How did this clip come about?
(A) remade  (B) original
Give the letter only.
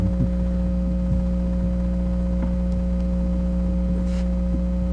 B